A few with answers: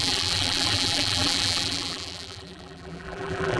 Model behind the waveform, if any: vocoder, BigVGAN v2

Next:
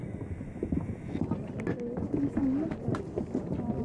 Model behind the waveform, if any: none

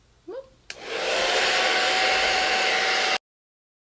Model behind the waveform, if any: none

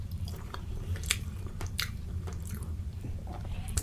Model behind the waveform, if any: vocoder, BigVGAN v2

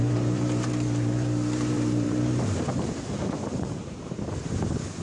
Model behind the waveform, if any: vocoder, BigVGAN v2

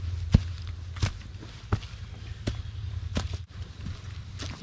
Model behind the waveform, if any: none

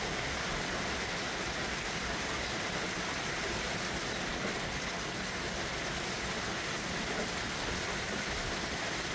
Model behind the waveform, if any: none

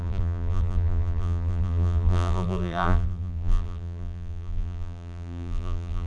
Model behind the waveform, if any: vocoder, BigVGAN v2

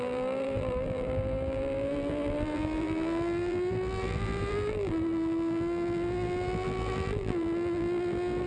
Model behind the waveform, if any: vocoder, BigVGAN v2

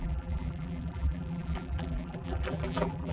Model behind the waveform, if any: vocoder, BigVGAN v2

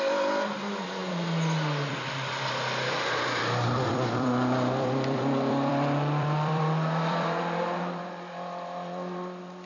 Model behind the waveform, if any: vocoder, BigVGAN v2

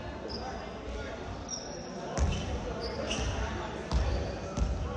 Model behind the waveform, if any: none